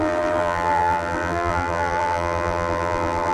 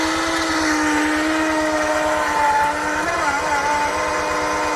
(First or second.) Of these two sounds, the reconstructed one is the first